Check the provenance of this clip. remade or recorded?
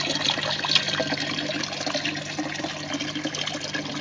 recorded